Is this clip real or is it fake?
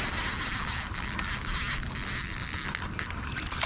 fake